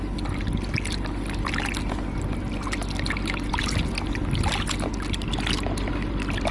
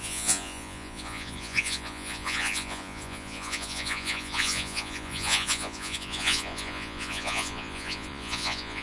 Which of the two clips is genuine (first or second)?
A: first